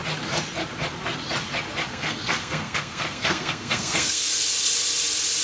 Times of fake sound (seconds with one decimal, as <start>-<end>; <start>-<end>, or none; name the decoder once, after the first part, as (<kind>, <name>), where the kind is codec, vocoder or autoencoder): 1.9-4.3 (codec, SNAC)